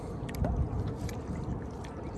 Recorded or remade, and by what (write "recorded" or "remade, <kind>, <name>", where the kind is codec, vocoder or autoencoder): recorded